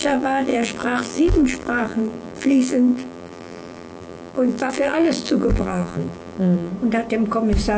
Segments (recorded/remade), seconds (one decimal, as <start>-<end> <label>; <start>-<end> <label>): 0.0-6.7 remade; 6.7-7.8 recorded